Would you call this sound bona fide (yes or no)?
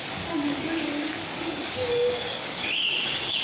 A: no